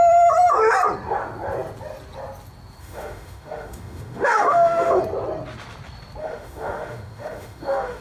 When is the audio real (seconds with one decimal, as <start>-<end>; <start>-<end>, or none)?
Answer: 0.0-2.8; 5.0-6.2